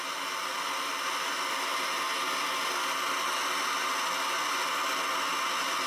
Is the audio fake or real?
real